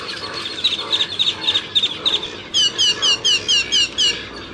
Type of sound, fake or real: real